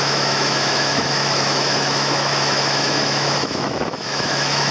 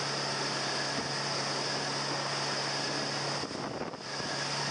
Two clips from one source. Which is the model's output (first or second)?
first